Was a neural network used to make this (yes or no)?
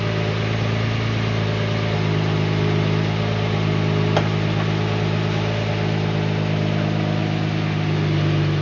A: no